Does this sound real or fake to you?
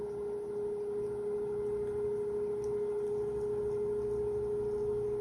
real